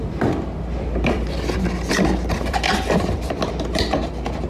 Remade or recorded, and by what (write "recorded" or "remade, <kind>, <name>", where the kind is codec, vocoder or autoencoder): remade, vocoder, BigVGAN v2